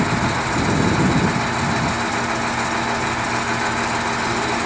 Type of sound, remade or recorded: recorded